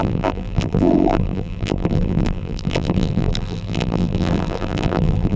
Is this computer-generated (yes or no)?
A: yes